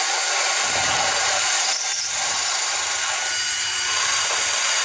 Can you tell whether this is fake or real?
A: fake